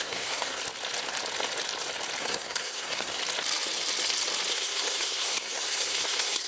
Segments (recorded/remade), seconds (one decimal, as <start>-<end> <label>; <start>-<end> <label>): 0.0-0.6 remade; 0.6-2.2 recorded; 2.2-3.2 remade; 3.2-4.5 recorded; 4.5-6.5 remade